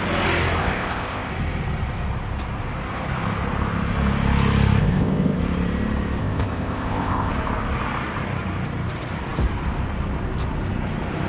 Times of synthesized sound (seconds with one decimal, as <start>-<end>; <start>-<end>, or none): 0.6-1.3; 4.8-5.4; 6.2-7.3